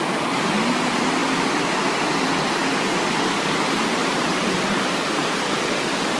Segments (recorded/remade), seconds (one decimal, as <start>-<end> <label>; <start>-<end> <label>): 0.0-4.3 recorded; 4.3-5.2 remade; 5.2-6.2 recorded